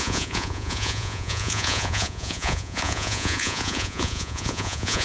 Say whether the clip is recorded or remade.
remade